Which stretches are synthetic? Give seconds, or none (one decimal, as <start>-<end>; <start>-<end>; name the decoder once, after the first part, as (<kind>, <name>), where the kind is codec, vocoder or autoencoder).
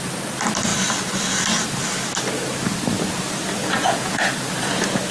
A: 3.6-4.3 (vocoder, Vocos)